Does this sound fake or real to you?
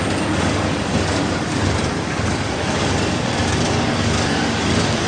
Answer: fake